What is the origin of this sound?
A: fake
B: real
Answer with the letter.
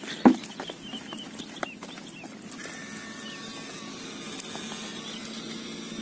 B